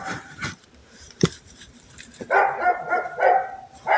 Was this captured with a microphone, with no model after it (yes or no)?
no